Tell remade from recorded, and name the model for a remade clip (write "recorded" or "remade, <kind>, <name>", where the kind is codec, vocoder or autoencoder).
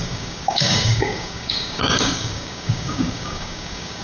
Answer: remade, codec, DAC